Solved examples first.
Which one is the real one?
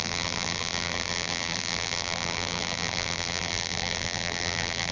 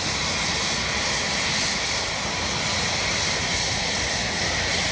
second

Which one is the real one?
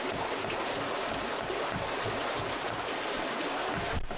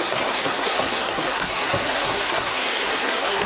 first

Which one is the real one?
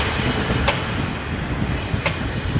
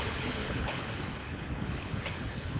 first